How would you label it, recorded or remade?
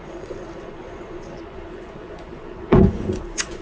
remade